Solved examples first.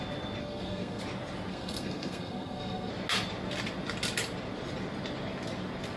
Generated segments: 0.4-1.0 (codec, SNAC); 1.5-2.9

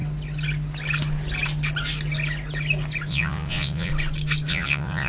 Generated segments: 3.1-3.9 (vocoder, Vocos); 4.5-5.1

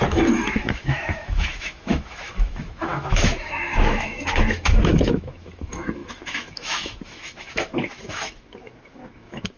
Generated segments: 0.0-9.6 (autoencoder, DAC-VAE)

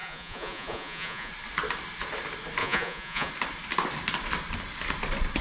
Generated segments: 0.0-1.3 (vocoder, Vocos); 2.6-3.3